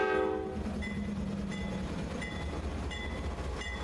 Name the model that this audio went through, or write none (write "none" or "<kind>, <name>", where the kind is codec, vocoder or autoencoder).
none